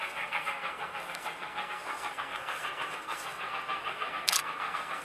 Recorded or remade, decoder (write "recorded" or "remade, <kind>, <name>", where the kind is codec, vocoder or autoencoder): remade, codec, SNAC